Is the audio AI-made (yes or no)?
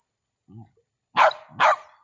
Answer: no